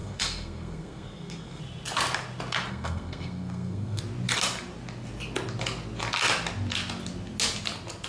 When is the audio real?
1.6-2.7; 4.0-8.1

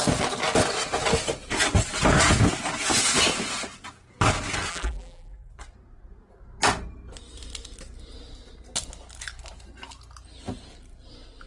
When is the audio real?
0.0-4.7; 5.5-11.5